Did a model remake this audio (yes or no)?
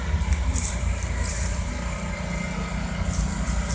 yes